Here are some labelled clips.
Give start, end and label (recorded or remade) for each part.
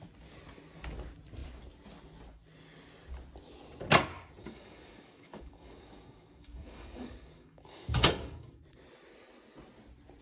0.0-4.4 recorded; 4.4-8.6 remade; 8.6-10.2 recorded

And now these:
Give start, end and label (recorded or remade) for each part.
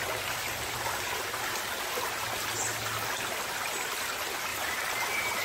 0.0-4.5 recorded; 4.5-5.4 remade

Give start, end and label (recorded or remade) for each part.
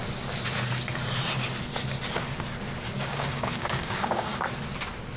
0.0-3.0 recorded; 3.0-4.3 remade; 4.3-5.2 recorded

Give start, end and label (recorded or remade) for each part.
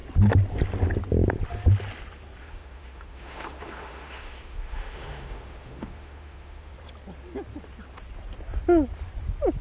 0.0-2.4 recorded; 2.4-6.7 remade; 6.7-9.6 recorded